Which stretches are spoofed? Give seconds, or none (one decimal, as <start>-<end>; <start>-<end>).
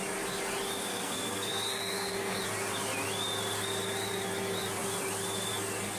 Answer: 0.9-2.4